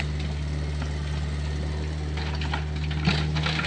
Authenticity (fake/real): real